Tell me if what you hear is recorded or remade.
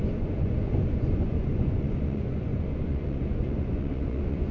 remade